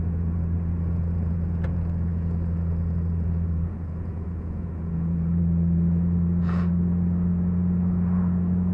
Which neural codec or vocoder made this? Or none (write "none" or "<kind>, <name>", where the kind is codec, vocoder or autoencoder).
vocoder, Vocos